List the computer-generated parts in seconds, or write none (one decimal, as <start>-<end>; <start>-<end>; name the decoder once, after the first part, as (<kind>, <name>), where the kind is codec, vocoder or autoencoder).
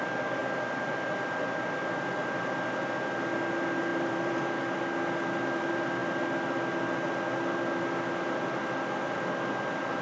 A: 3.9-4.8 (vocoder, BigVGAN v2)